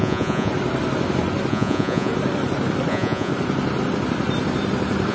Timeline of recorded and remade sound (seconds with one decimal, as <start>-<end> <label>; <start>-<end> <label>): 0.0-0.5 remade; 0.5-1.5 recorded; 1.5-2.1 remade; 2.1-2.9 recorded; 2.9-3.3 remade; 3.3-5.1 recorded